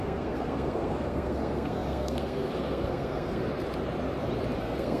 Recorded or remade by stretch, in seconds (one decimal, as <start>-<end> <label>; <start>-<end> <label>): 0.0-3.4 remade; 3.4-4.6 recorded; 4.6-5.0 remade